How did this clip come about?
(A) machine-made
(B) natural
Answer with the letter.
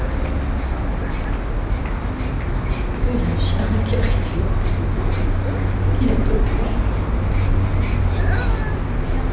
B